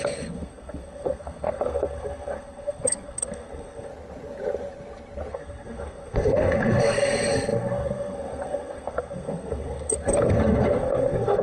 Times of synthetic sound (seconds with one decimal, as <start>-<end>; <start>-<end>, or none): 0.0-3.9; 5.3-11.4

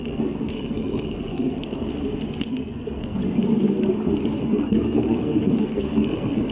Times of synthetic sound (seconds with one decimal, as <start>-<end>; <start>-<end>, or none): 0.0-1.9; 2.5-3.2; 4.4-6.5